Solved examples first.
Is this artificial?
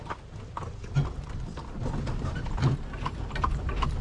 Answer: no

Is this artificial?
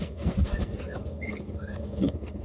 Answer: yes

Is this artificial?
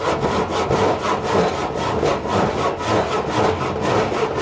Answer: no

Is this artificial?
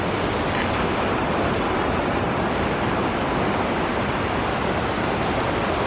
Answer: no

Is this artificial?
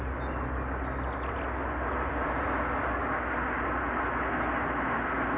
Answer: no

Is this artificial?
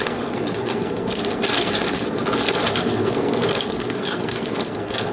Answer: yes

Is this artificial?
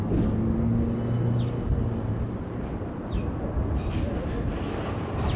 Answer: no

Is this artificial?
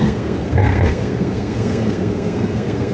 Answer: yes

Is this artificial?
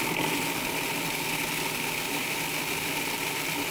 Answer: no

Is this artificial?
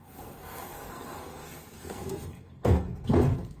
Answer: yes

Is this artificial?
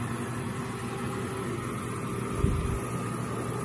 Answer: no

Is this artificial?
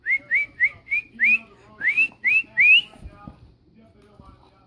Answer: no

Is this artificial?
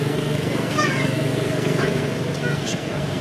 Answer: yes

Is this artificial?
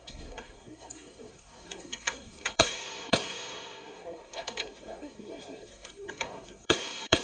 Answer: yes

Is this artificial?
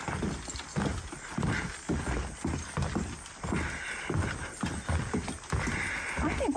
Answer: no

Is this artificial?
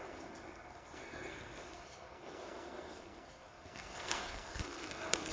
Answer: yes